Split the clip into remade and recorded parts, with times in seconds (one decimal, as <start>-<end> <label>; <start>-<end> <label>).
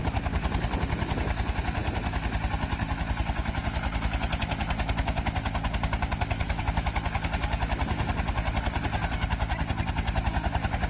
0.0-10.9 recorded